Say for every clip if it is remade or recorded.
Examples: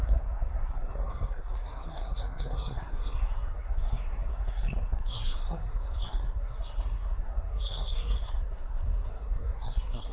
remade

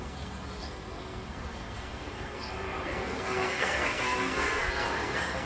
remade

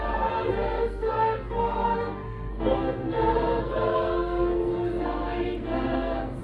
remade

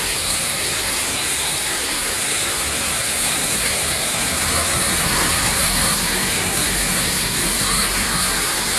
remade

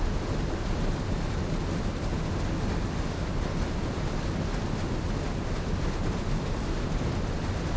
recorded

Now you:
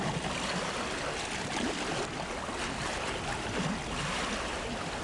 recorded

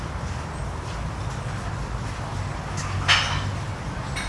recorded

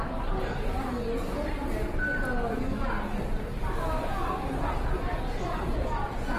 recorded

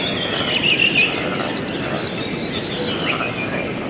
recorded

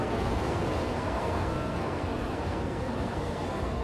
remade